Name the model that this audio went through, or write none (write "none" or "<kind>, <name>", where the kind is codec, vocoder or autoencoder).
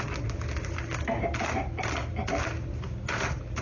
none